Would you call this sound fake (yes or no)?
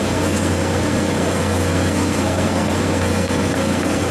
yes